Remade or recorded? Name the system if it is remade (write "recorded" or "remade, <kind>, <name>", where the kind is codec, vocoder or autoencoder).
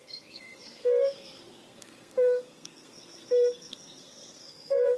remade, codec, SNAC